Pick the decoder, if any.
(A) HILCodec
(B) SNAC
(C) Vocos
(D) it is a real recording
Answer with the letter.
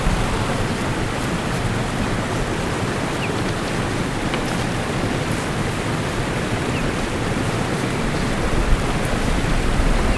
D